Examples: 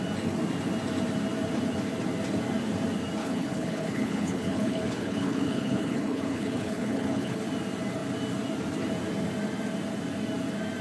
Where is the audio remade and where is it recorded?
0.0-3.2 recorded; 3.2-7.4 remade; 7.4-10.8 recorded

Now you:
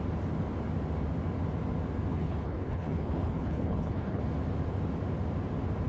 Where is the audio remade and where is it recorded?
0.0-2.1 recorded; 2.1-4.2 remade; 4.2-5.9 recorded

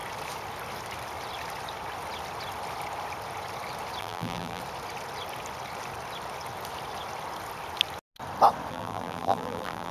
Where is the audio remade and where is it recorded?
0.0-4.0 recorded; 4.0-4.6 remade; 4.6-8.7 recorded; 8.7-9.9 remade